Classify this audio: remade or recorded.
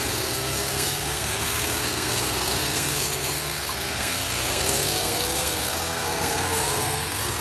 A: remade